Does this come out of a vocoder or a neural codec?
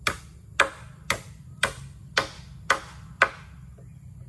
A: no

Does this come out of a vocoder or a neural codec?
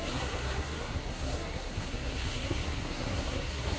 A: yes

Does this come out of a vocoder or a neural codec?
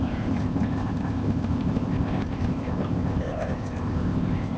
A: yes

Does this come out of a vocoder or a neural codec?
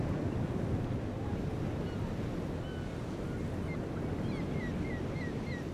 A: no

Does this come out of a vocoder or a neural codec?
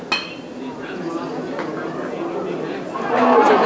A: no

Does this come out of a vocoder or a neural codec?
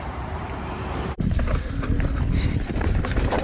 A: yes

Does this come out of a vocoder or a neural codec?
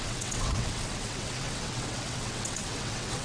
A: yes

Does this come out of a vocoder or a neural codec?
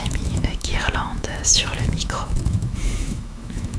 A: yes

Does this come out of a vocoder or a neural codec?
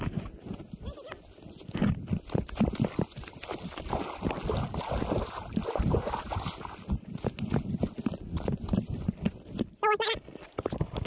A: no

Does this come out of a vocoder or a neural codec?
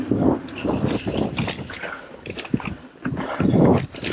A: no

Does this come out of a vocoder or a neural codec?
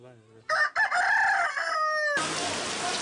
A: no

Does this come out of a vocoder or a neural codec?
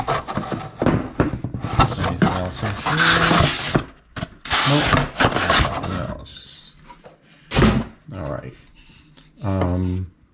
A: no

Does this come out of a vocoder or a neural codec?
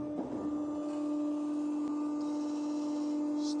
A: no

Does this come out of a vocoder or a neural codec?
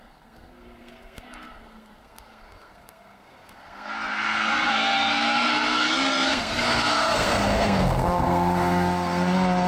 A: yes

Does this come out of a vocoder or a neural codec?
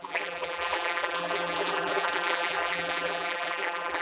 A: yes